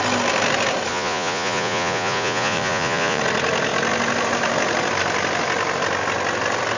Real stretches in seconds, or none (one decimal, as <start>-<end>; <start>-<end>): 0.0-0.9; 3.2-6.8